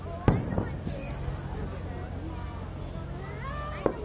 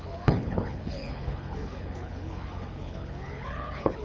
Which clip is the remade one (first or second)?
second